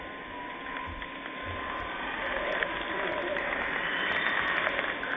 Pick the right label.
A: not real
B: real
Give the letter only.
B